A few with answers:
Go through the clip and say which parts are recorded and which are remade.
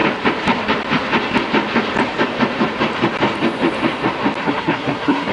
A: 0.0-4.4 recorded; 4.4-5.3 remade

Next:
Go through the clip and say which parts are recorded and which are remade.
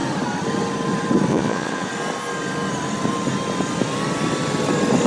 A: 0.0-1.3 recorded; 1.3-1.9 remade; 1.9-5.1 recorded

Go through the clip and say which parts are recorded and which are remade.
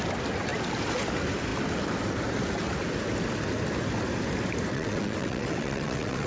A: 0.0-4.7 recorded; 4.7-6.3 remade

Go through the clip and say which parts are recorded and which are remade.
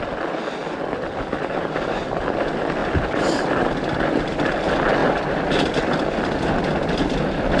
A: 0.0-2.8 recorded; 2.8-3.6 remade; 3.6-7.6 recorded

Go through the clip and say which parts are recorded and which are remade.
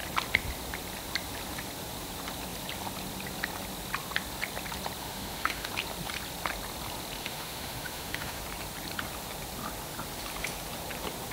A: 0.0-5.0 recorded; 5.0-5.7 remade; 5.7-7.2 recorded; 7.2-8.4 remade; 8.4-11.3 recorded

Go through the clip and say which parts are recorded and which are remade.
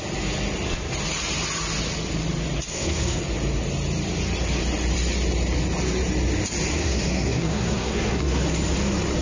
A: 0.0-2.7 recorded; 2.7-3.2 remade; 3.2-6.7 recorded; 6.7-8.4 remade; 8.4-9.2 recorded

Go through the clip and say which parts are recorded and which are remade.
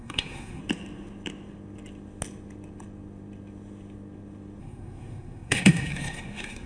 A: 0.0-0.6 remade; 0.6-4.6 recorded; 4.6-6.7 remade